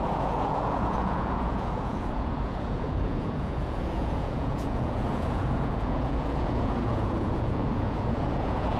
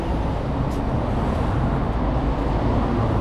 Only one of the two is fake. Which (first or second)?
first